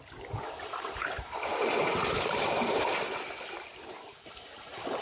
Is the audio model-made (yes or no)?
yes